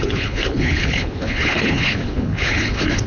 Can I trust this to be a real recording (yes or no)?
no